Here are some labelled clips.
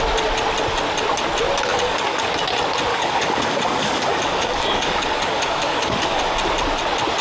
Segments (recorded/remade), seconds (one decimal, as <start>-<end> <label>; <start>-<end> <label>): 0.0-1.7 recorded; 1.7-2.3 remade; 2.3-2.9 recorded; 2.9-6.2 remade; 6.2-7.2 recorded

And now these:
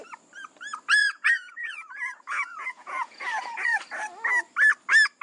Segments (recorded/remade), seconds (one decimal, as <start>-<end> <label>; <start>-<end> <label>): 0.0-1.0 recorded; 1.0-3.8 remade; 3.8-5.2 recorded

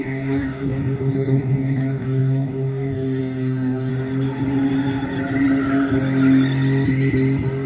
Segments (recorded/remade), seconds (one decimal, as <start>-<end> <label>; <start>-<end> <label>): 0.0-3.9 remade; 3.9-7.7 recorded